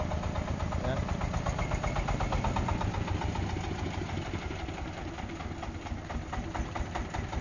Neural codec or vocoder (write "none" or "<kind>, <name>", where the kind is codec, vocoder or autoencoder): none